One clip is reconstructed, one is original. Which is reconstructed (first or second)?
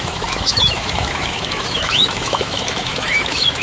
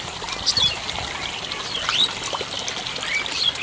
first